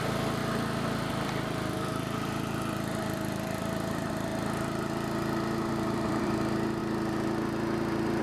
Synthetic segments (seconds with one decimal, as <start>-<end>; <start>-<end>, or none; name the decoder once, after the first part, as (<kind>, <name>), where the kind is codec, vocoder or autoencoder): 0.0-0.4 (vocoder, BigVGAN v2); 1.1-4.3; 5.7-6.8